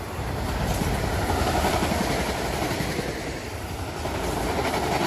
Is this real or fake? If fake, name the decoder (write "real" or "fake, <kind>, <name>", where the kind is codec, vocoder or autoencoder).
real